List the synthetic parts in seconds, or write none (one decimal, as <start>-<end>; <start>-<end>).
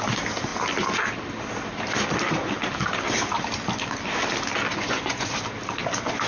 4.7-5.3